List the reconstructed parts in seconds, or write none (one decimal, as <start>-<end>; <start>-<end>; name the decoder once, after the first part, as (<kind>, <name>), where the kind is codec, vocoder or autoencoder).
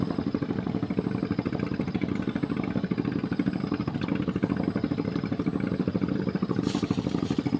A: none